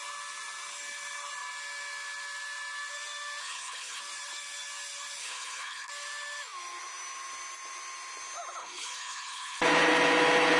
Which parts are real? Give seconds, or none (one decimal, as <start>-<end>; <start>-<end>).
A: 0.0-3.4; 4.0-5.2; 5.9-8.6; 9.6-10.6